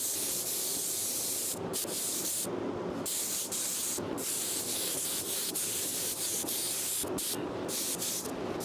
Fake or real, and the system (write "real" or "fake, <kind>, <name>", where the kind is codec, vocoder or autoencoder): real